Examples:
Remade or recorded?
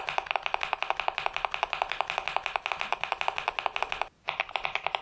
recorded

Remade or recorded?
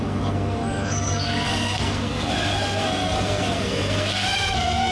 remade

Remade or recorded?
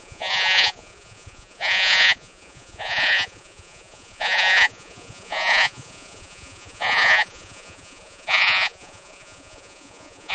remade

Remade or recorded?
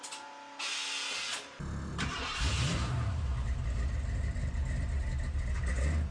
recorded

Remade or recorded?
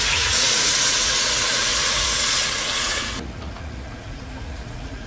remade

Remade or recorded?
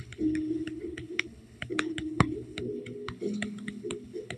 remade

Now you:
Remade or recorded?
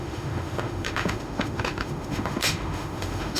remade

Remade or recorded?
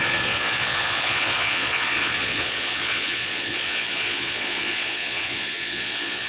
remade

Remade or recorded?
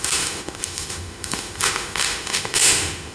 remade